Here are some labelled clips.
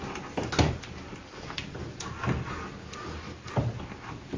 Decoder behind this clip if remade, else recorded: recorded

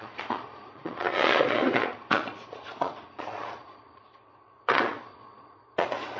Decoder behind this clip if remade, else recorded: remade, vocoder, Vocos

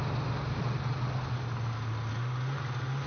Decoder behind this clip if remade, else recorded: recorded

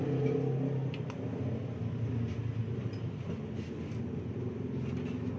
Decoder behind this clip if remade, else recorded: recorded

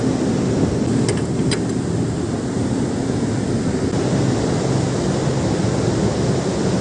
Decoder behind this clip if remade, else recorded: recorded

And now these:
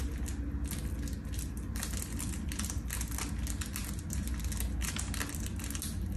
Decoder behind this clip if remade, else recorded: recorded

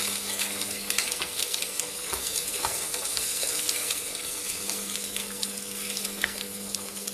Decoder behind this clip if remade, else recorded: remade, codec, SNAC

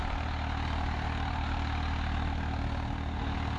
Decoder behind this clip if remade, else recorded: recorded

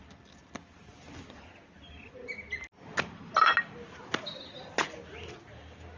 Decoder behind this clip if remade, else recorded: recorded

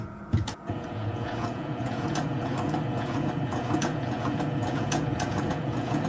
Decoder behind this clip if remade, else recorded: remade, vocoder, Vocos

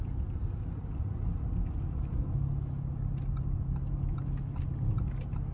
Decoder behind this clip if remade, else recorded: recorded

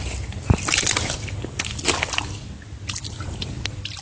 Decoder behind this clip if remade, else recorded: recorded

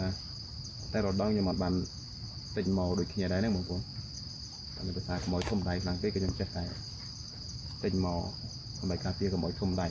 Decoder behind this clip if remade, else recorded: recorded